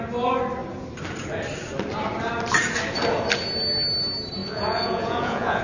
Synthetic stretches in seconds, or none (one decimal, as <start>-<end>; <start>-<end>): 4.4-5.6